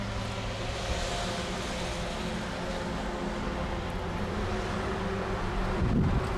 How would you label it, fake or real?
real